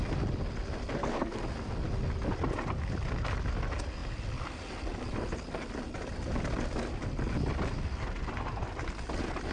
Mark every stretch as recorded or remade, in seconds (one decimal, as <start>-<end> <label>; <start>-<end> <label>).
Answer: 0.0-9.5 recorded